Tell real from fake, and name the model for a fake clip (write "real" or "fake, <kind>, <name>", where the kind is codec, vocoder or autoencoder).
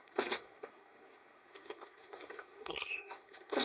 fake, codec, SNAC